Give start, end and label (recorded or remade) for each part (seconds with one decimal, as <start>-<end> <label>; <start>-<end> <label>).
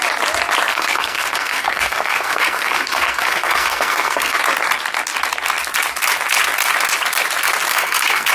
0.0-0.7 recorded; 0.7-4.4 remade; 4.4-7.7 recorded; 7.7-8.3 remade